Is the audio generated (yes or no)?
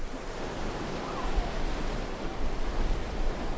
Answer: no